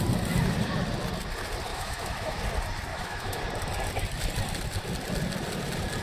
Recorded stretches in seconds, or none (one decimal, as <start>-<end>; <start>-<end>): 0.0-1.7; 2.4-2.9; 3.4-6.0